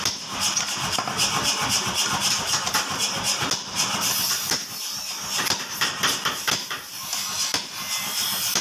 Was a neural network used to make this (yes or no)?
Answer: no